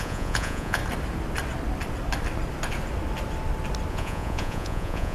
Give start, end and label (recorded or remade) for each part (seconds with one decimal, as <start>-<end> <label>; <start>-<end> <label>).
0.0-0.8 remade; 0.8-3.9 recorded; 3.9-5.1 remade